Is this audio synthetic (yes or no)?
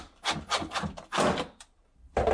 no